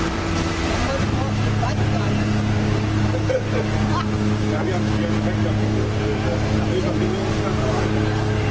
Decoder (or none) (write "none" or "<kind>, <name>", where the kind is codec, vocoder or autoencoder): none